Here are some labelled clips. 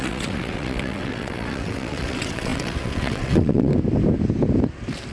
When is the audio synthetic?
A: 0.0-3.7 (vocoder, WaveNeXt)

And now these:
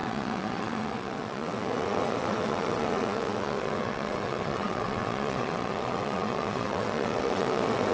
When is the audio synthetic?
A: 0.0-7.9 (vocoder, WaveNeXt)

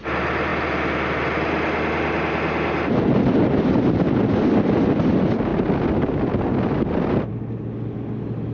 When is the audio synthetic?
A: none

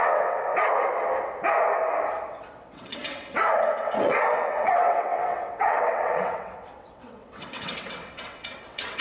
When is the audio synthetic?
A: 0.0-0.5 (vocoder, WaveNeXt); 2.3-9.0

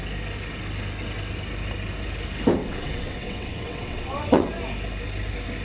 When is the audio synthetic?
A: 2.6-4.5 (vocoder, WaveNeXt)

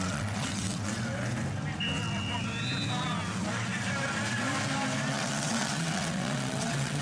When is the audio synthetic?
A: 0.0-0.9 (vocoder, WaveNeXt); 5.1-7.0